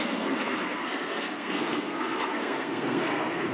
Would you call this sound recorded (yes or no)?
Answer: no